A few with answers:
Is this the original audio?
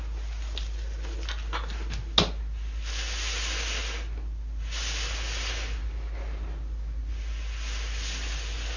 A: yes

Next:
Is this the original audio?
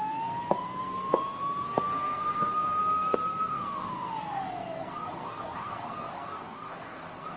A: no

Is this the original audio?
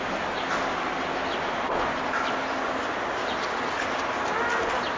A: yes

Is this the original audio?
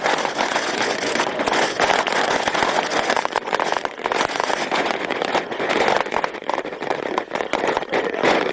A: no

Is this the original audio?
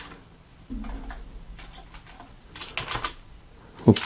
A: yes